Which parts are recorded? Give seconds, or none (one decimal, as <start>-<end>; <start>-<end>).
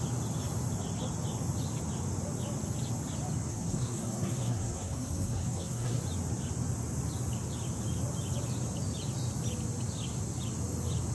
0.0-3.5; 6.0-11.1